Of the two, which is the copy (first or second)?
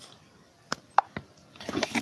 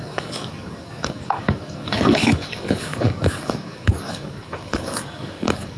second